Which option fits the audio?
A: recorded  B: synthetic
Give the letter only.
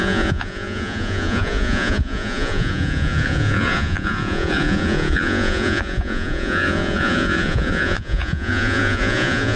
B